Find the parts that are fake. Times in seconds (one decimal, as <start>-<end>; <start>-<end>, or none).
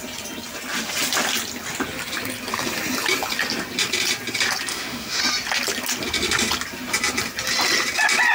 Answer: 4.7-5.2